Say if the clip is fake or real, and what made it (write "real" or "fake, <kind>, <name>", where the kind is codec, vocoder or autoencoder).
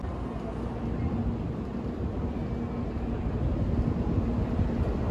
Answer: real